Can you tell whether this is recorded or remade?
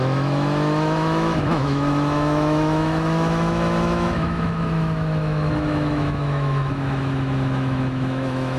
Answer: remade